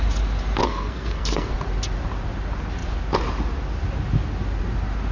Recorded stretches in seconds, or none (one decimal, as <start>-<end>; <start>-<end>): 0.0-0.6; 1.5-5.1